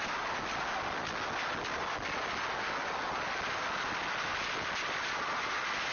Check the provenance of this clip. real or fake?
real